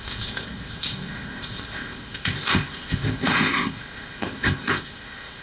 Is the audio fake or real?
fake